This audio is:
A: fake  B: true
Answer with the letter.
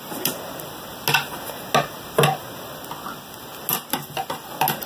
B